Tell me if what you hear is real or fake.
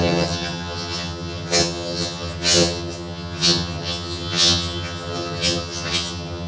fake